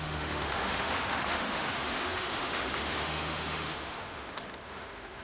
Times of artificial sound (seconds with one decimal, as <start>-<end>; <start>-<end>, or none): 0.0-5.2